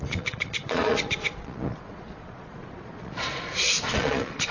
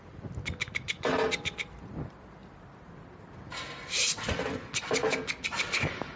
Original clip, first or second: second